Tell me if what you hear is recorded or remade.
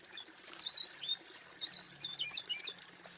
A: recorded